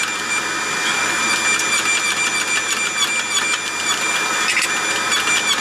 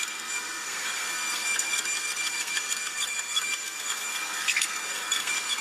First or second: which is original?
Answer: first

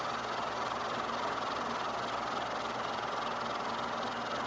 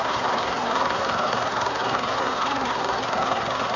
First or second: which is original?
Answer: first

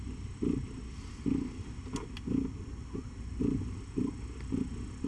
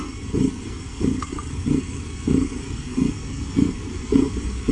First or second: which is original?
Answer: first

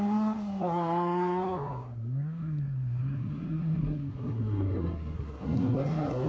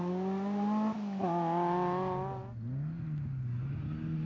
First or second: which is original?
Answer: second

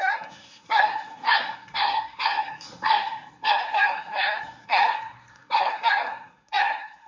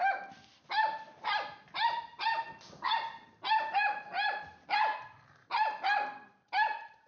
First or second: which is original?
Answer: second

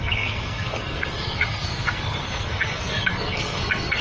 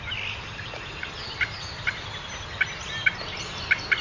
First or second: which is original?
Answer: second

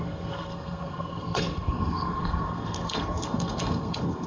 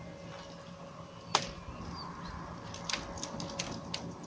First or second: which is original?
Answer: second